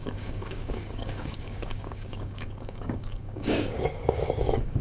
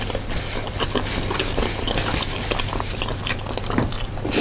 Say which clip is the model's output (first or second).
first